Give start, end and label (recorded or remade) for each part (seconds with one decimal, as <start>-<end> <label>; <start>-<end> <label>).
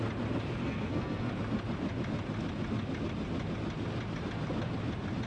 0.0-0.6 recorded; 0.6-1.3 remade; 1.3-5.3 recorded